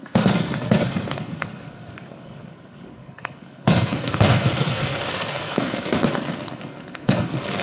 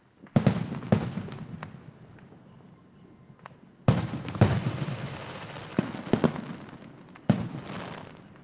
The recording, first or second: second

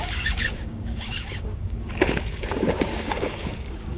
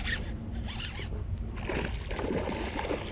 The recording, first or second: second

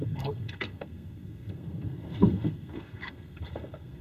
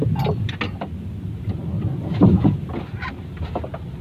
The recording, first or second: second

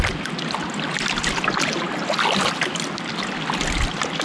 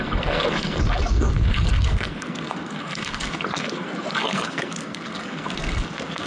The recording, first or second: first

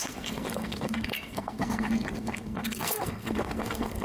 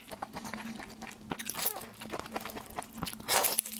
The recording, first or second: second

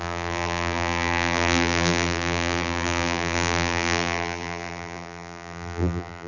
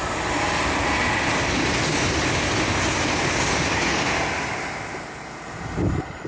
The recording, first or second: second